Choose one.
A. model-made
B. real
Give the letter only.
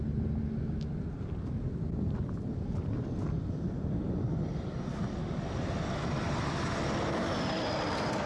B